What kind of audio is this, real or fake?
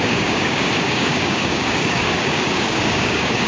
fake